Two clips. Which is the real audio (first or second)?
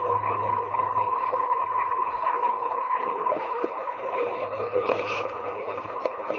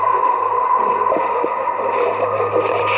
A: second